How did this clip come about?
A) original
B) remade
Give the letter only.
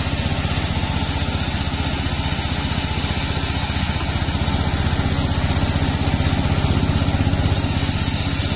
A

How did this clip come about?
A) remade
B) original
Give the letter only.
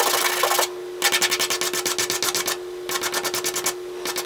B